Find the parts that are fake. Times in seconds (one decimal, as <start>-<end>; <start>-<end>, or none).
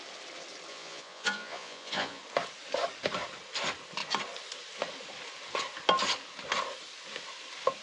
0.7-2.2